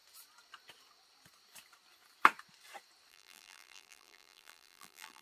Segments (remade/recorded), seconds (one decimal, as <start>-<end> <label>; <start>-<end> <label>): 0.0-3.1 recorded; 3.1-5.2 remade

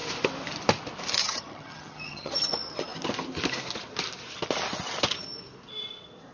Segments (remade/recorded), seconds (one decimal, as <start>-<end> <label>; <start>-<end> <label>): 0.0-1.2 recorded; 1.2-2.3 remade; 2.3-6.3 recorded

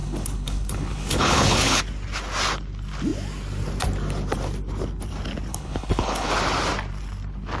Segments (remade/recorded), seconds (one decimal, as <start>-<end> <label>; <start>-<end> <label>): 0.0-1.8 remade; 1.8-5.5 recorded; 5.5-6.3 remade; 6.3-7.6 recorded